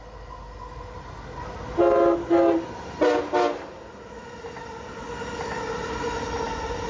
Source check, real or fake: real